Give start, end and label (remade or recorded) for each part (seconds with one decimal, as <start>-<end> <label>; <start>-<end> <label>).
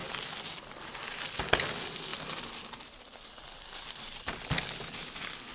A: 0.0-1.0 remade; 1.0-2.1 recorded; 2.1-5.5 remade